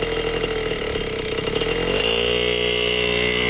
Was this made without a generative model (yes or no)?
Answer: yes